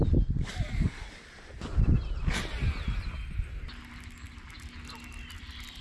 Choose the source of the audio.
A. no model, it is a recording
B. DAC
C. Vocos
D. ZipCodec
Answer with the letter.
A